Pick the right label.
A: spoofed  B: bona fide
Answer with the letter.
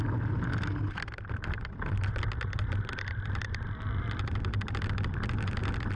B